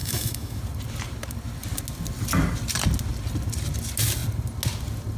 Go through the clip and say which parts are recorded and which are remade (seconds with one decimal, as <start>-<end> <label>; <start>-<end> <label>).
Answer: 0.0-0.6 remade; 0.6-5.2 recorded